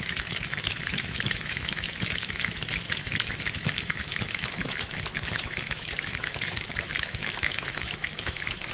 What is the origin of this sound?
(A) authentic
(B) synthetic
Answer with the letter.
B